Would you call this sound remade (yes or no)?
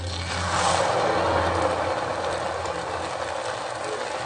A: no